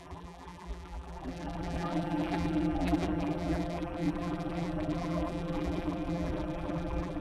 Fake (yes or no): yes